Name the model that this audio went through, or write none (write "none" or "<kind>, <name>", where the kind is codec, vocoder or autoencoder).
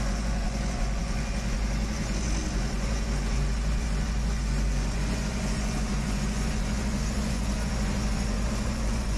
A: vocoder, Vocos